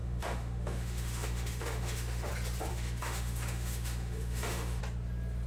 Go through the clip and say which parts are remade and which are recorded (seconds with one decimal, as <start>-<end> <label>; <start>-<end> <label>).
0.0-2.3 remade; 2.3-2.7 recorded; 2.7-4.8 remade; 4.8-5.5 recorded